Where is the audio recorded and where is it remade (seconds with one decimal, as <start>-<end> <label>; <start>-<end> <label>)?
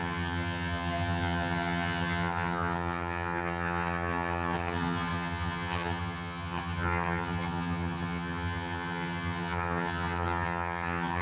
0.0-11.2 remade